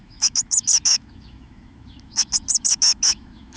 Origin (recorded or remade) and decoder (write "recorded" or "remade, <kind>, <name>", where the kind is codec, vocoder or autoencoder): remade, autoencoder, DAC-VAE